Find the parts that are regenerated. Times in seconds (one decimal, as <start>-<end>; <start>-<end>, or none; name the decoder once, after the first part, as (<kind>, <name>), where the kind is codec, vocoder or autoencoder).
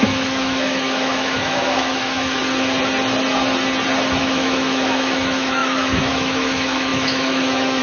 0.0-2.4 (autoencoder, DAC-VAE); 4.2-7.8